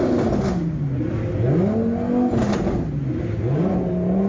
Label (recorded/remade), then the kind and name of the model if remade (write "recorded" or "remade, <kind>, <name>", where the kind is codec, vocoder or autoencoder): recorded